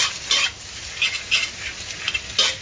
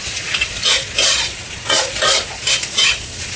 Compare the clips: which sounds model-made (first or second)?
second